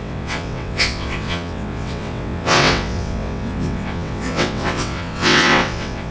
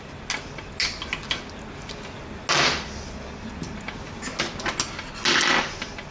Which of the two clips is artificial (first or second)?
first